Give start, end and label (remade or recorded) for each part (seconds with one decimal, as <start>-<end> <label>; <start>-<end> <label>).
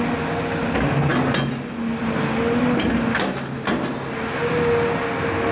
0.0-5.5 recorded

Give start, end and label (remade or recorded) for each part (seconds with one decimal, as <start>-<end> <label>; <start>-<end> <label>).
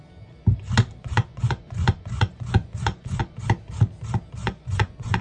0.0-1.0 recorded; 1.0-3.2 remade; 3.2-4.4 recorded; 4.4-5.2 remade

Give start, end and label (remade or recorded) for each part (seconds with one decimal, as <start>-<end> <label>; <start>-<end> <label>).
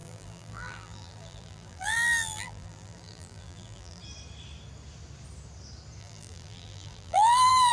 0.0-4.0 remade; 4.0-6.0 recorded; 6.0-7.7 remade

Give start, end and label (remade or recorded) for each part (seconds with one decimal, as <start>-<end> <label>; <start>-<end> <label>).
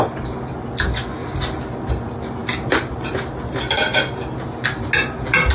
0.0-1.2 recorded; 1.2-1.9 remade; 1.9-2.4 recorded; 2.4-3.3 remade; 3.3-5.5 recorded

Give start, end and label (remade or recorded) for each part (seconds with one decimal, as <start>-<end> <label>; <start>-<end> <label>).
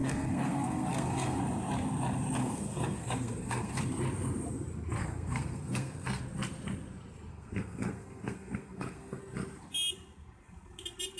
0.0-1.4 remade; 1.4-2.4 recorded; 2.4-3.8 remade; 3.8-5.0 recorded; 5.0-6.2 remade; 6.2-7.3 recorded; 7.3-9.2 remade; 9.2-11.2 recorded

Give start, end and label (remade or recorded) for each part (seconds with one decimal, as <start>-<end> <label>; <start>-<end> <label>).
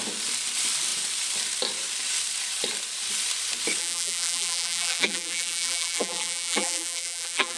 0.0-3.8 recorded; 3.8-7.6 remade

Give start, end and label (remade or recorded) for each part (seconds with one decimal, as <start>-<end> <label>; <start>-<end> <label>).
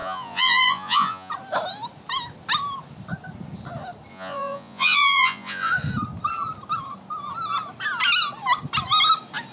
0.0-1.3 remade; 1.3-4.1 recorded; 4.1-5.7 remade; 5.7-9.5 recorded